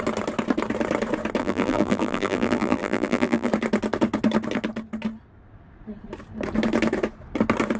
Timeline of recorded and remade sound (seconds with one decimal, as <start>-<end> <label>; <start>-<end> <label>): 0.0-1.4 recorded; 1.4-3.5 remade; 3.5-7.8 recorded